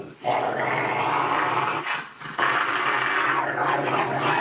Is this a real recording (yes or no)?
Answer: yes